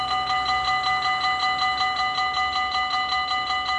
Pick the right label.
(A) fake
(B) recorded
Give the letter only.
B